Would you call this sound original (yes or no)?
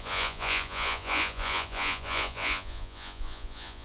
no